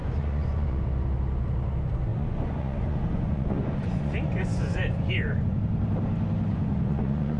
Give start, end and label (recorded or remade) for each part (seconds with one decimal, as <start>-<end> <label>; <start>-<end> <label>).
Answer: 0.0-0.8 remade; 0.8-2.1 recorded; 2.1-5.6 remade; 5.6-6.5 recorded; 6.5-7.4 remade

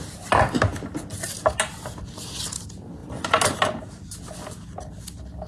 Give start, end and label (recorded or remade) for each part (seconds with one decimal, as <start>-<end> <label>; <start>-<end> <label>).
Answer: 0.0-5.5 recorded